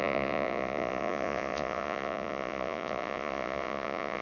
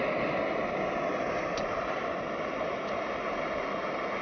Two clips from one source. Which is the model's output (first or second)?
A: first